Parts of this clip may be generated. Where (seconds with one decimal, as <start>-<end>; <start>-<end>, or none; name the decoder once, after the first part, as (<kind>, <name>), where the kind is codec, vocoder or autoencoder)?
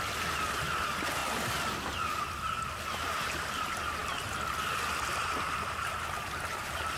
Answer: none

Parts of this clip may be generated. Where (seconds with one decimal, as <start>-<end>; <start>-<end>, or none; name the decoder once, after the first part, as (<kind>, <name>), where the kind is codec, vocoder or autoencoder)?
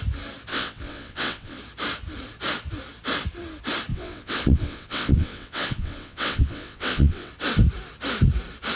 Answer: 0.5-1.6 (vocoder, WaveNeXt); 3.9-7.3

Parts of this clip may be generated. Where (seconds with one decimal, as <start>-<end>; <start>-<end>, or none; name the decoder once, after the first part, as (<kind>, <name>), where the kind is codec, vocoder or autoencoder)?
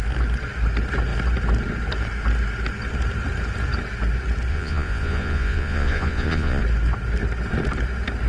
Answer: 4.5-6.6 (vocoder, Vocos)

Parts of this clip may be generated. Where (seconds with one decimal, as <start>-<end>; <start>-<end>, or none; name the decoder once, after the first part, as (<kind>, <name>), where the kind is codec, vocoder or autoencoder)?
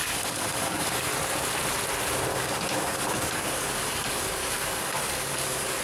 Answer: 0.0-1.1 (codec, DAC); 2.3-5.8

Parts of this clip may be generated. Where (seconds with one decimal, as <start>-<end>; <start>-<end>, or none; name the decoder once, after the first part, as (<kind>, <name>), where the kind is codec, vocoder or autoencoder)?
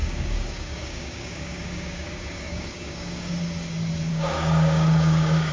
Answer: 0.0-3.3 (codec, DAC); 4.1-5.5